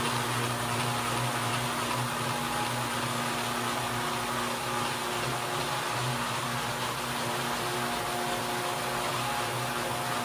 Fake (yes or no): no